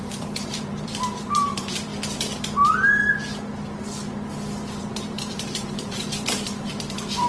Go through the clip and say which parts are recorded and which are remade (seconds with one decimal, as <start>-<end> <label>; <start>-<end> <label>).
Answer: 0.0-1.9 remade; 1.9-4.8 recorded; 4.8-7.3 remade